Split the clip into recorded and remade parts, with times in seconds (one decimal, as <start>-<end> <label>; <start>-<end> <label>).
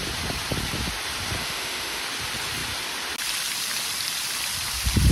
0.0-1.4 recorded; 1.4-2.0 remade; 2.0-5.1 recorded